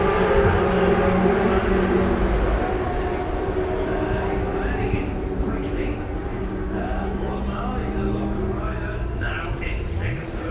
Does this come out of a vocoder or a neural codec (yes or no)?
no